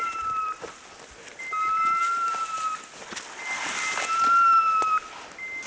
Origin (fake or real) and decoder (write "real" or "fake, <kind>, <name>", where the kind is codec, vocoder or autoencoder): real